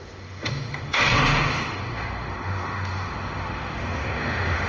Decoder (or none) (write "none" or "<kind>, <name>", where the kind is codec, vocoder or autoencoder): autoencoder, DAC-VAE